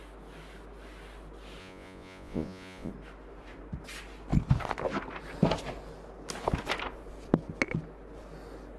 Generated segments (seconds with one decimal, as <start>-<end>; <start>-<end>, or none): 1.6-2.9